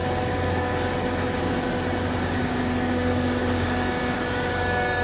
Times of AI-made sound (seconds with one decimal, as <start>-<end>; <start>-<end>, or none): 0.0-0.7; 2.4-5.0